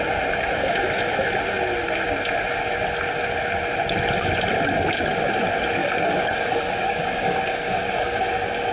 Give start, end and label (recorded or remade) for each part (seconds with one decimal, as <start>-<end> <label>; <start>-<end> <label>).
0.0-5.8 recorded; 5.8-8.2 remade; 8.2-8.7 recorded